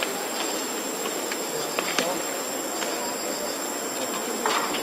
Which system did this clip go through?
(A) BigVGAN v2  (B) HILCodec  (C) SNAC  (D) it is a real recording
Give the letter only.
D